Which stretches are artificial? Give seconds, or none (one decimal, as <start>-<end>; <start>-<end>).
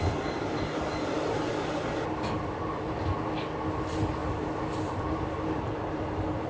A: 4.2-6.5